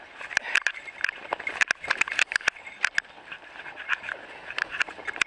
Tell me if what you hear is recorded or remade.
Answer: recorded